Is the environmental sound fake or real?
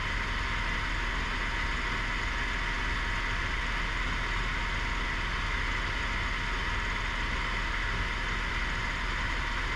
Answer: real